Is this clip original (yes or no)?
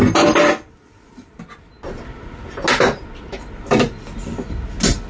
yes